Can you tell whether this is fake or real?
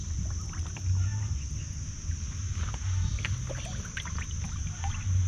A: real